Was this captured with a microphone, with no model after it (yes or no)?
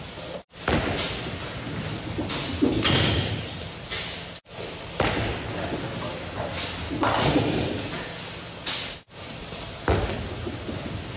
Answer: yes